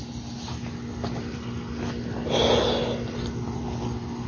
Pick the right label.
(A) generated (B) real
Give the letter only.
B